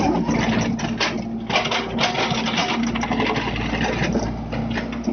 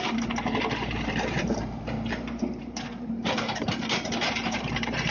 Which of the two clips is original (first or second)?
first